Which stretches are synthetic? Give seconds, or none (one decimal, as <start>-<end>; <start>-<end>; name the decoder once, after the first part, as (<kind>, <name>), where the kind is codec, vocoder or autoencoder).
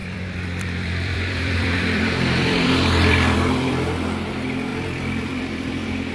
0.0-3.7 (vocoder, BigVGAN v2); 4.7-6.1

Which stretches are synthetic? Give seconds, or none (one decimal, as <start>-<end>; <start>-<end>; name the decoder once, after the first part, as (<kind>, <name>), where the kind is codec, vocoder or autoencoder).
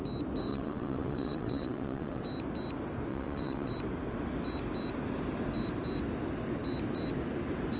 0.5-2.2 (vocoder, WaveNeXt); 3.1-3.7